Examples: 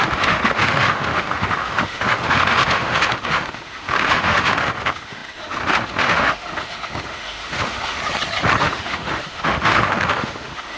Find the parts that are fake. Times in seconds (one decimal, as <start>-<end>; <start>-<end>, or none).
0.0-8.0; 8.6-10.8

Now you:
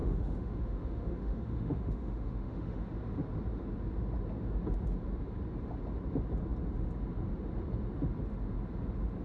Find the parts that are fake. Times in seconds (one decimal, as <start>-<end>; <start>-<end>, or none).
0.0-2.9

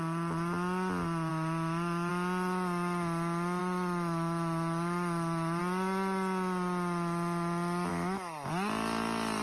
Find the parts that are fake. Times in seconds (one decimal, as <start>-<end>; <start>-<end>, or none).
1.3-2.1; 3.6-5.6; 7.9-8.5

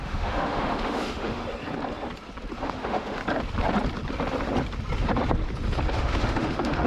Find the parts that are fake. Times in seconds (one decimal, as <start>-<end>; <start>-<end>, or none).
0.0-1.4; 2.6-3.2; 5.9-6.9